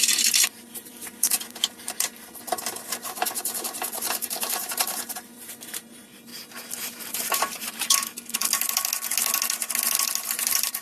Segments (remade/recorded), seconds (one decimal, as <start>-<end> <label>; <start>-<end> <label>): 0.0-6.3 remade; 6.3-7.1 recorded; 7.1-8.4 remade; 8.4-10.2 recorded; 10.2-10.8 remade

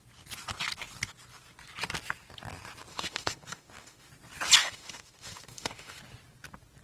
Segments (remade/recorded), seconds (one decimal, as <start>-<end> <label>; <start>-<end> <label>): 0.0-2.9 recorded; 2.9-4.1 remade; 4.1-4.6 recorded; 4.6-6.0 remade; 6.0-6.8 recorded

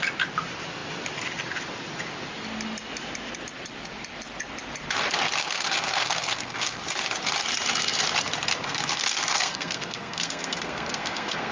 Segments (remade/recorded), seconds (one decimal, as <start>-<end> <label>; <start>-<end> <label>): 0.0-5.4 recorded; 5.4-6.8 remade; 6.8-8.6 recorded; 8.6-11.5 remade

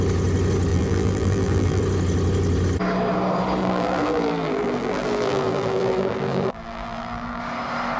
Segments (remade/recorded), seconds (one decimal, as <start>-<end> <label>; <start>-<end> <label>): 0.0-0.7 recorded; 0.7-1.8 remade; 1.8-3.6 recorded; 3.6-7.4 remade; 7.4-8.0 recorded

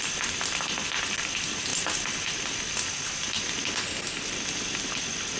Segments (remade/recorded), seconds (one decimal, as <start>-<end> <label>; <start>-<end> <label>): 0.0-5.4 recorded

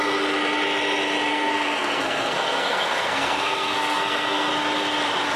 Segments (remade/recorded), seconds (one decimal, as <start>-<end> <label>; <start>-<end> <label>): 0.0-1.3 recorded; 1.3-4.5 remade; 4.5-5.4 recorded

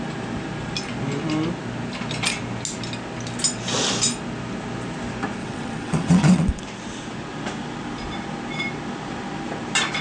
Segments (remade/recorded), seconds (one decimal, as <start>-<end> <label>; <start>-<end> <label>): 0.0-5.4 recorded; 5.4-6.6 remade; 6.6-10.0 recorded